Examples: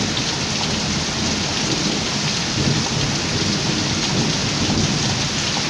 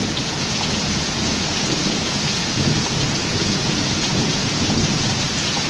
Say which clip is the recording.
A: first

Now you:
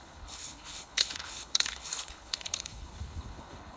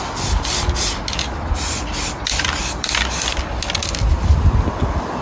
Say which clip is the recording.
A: second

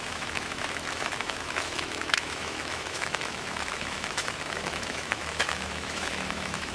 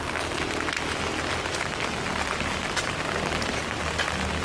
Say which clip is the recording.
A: second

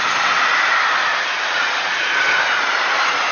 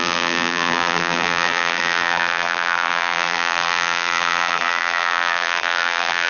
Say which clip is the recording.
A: first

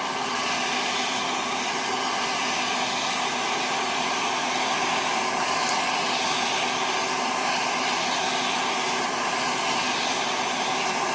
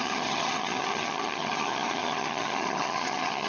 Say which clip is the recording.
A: first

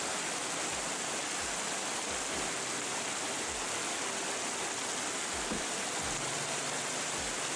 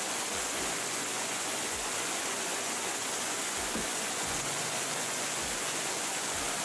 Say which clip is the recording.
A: first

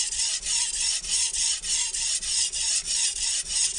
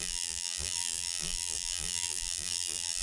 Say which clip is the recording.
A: first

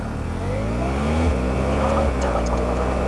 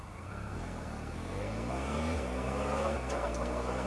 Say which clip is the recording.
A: first